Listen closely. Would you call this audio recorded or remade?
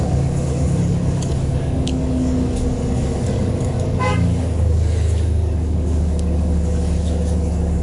remade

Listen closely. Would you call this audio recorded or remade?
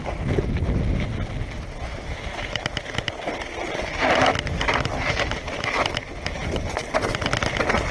recorded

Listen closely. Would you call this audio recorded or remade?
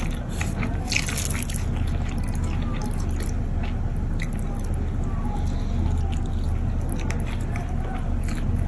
recorded